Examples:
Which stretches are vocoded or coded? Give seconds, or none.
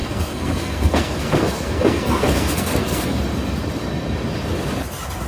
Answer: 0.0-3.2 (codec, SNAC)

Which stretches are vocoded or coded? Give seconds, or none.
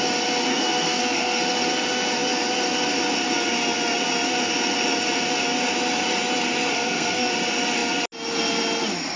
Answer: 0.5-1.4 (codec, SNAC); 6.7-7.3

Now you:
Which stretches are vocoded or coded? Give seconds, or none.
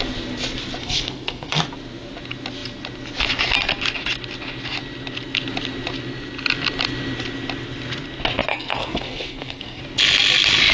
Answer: 0.8-1.6 (codec, SNAC); 8.5-9.8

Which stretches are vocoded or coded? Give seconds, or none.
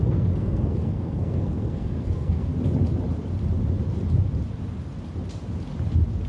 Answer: 0.0-2.5 (codec, SNAC)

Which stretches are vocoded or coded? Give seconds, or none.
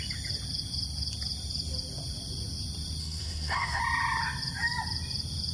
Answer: 3.0-3.8 (codec, SNAC)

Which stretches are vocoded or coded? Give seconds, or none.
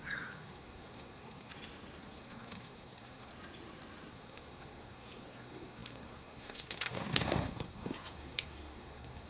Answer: 0.0-1.5 (codec, SNAC); 2.0-3.3; 4.1-9.3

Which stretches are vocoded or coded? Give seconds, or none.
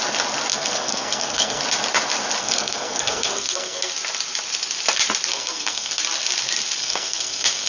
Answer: 0.5-1.6 (codec, SNAC); 2.4-3.9; 5.3-6.0; 6.8-7.7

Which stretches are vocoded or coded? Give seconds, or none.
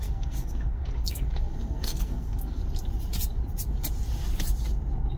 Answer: 0.0-2.6 (codec, SNAC)